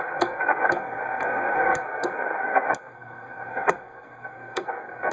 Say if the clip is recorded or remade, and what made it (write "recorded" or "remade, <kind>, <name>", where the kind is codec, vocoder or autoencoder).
remade, codec, SNAC